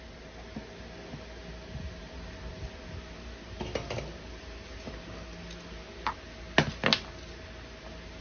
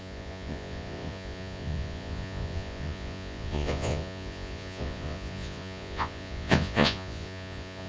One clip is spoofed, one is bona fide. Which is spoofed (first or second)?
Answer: second